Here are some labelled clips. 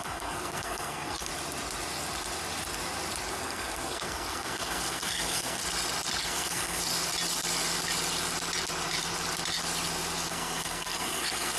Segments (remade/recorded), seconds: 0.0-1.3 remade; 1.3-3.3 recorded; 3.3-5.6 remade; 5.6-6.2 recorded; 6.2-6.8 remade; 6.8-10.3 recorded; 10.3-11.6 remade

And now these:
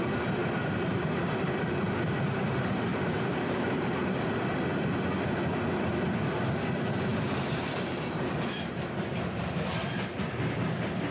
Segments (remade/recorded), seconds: 0.0-0.4 recorded; 0.4-1.2 remade; 1.2-2.9 recorded; 2.9-4.4 remade; 4.4-7.1 recorded; 7.1-9.4 remade; 9.4-11.1 recorded

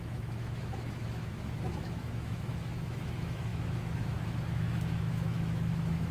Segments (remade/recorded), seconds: 0.0-6.1 remade

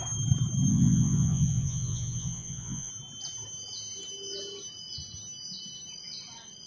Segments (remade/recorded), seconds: 0.0-0.7 recorded; 0.7-2.9 remade; 2.9-6.7 recorded

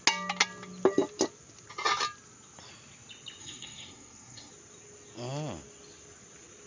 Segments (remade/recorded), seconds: 0.0-3.4 recorded; 3.4-4.5 remade; 4.5-6.7 recorded

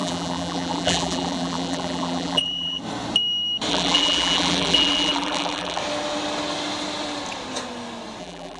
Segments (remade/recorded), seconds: 0.0-2.8 remade; 2.8-3.7 recorded; 3.7-5.8 remade; 5.8-8.2 recorded; 8.2-8.6 remade

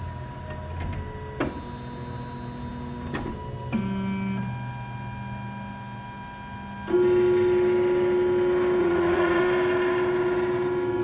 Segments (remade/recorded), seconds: 0.0-8.8 recorded; 8.8-9.4 remade; 9.4-11.0 recorded

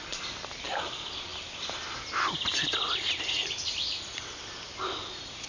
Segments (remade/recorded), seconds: 0.0-5.5 recorded